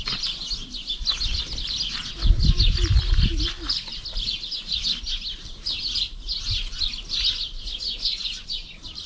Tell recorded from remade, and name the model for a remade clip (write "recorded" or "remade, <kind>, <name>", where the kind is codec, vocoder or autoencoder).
recorded